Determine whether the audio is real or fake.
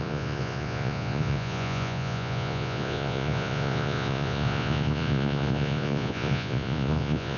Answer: fake